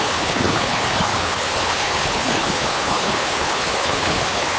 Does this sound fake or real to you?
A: fake